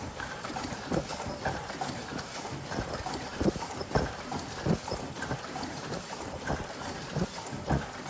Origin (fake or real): fake